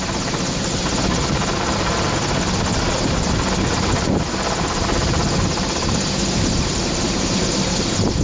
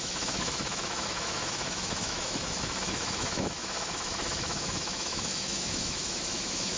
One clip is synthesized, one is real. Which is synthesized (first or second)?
second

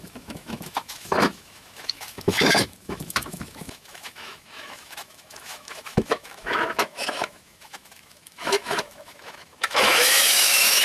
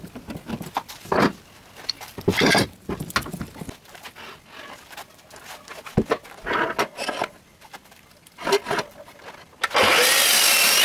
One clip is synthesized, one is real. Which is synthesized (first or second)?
first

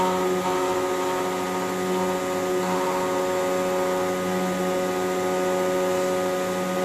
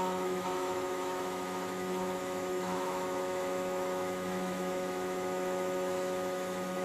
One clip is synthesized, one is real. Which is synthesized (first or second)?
second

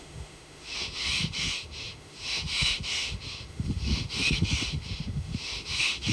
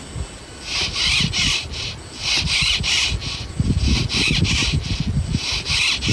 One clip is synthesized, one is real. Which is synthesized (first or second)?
first